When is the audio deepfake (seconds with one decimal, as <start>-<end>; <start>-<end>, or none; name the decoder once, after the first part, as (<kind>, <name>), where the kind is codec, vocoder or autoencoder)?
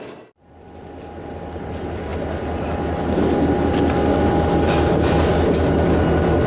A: none